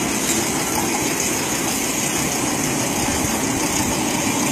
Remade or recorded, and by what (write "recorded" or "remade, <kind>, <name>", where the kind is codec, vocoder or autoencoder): recorded